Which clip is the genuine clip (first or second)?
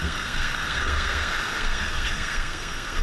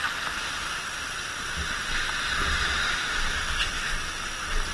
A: second